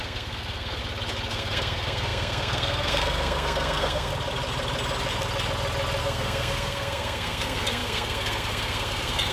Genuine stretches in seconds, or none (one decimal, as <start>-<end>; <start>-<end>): 0.8-1.3; 4.1-6.0